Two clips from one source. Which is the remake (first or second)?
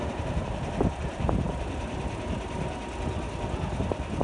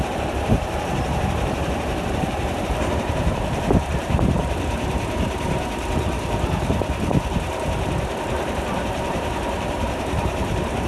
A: second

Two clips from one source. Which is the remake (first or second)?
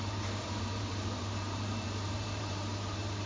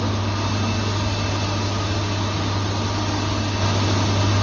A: first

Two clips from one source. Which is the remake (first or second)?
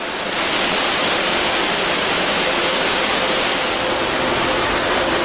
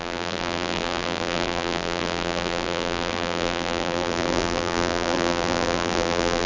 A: second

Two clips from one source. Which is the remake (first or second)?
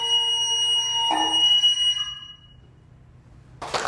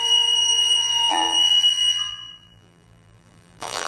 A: second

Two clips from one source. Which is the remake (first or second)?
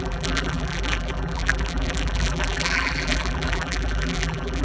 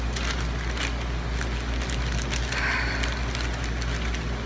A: first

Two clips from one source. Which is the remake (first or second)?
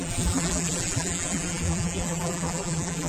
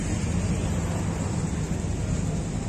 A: first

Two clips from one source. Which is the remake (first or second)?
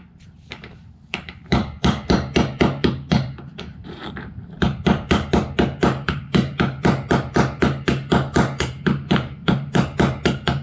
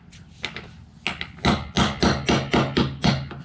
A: first